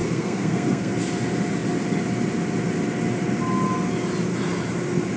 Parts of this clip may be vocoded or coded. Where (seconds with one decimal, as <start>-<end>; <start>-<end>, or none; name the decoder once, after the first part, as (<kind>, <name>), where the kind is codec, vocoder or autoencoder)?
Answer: 0.0-0.9 (codec, SNAC)